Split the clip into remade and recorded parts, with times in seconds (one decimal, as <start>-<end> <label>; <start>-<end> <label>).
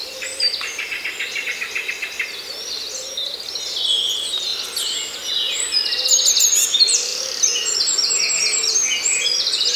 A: 0.0-0.9 remade; 0.9-9.8 recorded